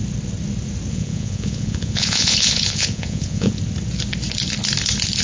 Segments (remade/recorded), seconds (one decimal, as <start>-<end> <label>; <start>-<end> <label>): 0.0-0.9 recorded; 0.9-3.6 remade; 3.6-5.2 recorded